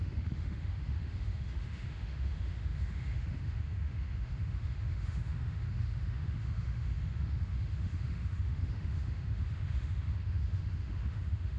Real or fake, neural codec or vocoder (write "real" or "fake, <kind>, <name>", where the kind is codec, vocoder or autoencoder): fake, autoencoder, DAC-VAE